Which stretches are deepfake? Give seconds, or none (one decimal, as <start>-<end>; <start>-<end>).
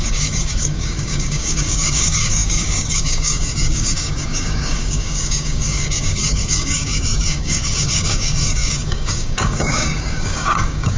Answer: 0.0-11.0